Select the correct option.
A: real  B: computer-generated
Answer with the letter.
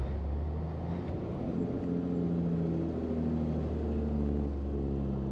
A